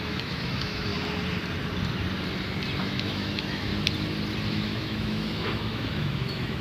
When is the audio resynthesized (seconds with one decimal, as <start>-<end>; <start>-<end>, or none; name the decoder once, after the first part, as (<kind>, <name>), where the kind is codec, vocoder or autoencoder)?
0.0-0.9 (autoencoder, DAC-VAE); 2.8-3.7; 4.5-6.6